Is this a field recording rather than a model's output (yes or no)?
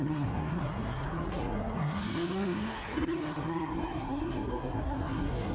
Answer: no